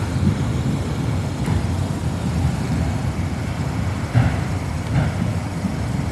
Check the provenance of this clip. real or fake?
real